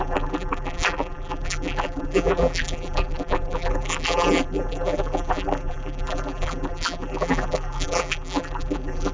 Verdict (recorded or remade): remade